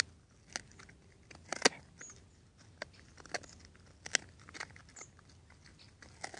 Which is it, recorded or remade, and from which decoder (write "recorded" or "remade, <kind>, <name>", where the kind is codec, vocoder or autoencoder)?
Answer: recorded